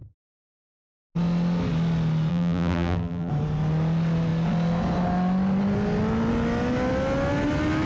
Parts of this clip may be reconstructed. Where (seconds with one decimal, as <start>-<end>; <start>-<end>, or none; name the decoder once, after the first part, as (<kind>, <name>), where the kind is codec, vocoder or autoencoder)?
2.3-3.3 (vocoder, BigVGAN v2)